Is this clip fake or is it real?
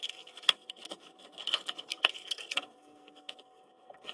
fake